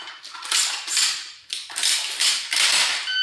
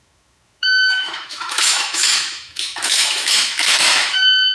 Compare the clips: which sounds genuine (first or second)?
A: first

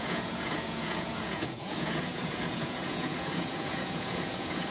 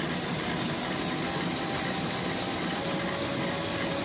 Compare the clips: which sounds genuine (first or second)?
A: second